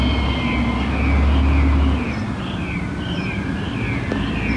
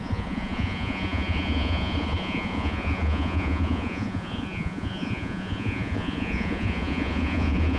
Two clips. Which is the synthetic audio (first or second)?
second